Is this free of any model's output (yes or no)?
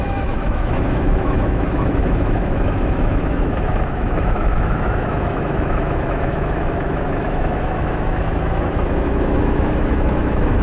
no